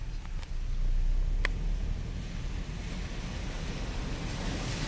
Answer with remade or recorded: recorded